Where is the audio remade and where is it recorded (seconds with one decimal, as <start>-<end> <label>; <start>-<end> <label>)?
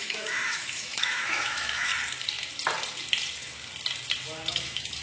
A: 0.0-1.9 remade; 1.9-4.5 recorded; 4.5-5.0 remade